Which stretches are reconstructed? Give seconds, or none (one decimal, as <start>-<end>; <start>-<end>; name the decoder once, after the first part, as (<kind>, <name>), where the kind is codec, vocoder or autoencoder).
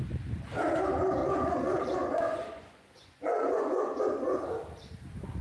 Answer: 1.2-4.0 (vocoder, Vocos)